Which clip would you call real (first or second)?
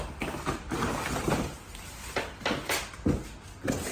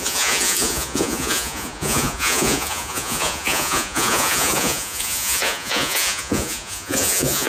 first